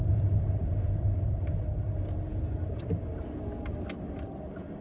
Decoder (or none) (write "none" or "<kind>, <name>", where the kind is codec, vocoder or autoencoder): none